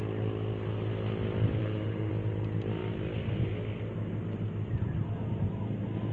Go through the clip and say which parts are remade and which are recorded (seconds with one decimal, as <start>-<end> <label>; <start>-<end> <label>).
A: 0.0-1.6 recorded; 1.6-2.1 remade; 2.1-6.1 recorded